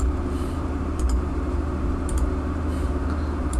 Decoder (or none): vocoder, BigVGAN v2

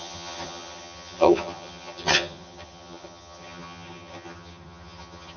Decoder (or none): vocoder, HiFi-GAN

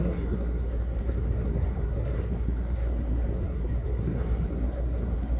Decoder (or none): codec, SNAC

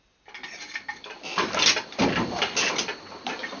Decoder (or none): none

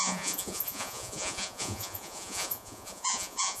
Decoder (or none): vocoder, Vocos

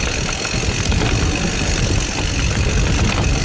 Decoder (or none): none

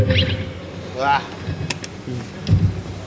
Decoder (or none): none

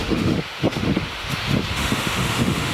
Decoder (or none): autoencoder, DAC-VAE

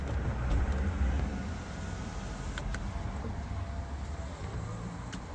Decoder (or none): none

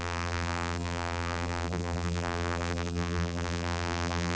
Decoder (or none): vocoder, BigVGAN v2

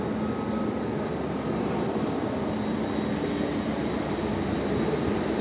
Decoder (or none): none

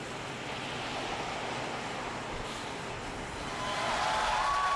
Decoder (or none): none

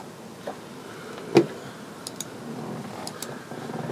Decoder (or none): none